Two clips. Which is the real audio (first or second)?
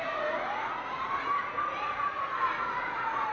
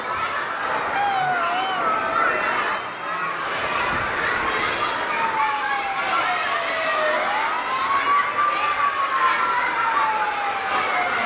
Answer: second